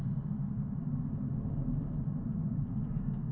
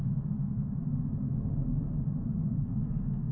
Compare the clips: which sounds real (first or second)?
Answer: first